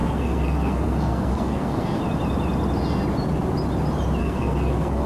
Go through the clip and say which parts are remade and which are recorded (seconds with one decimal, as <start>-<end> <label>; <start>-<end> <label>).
0.0-2.0 remade; 2.0-4.2 recorded; 4.2-5.1 remade